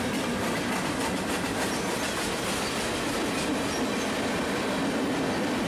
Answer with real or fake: real